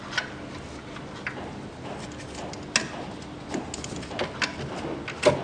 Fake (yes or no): no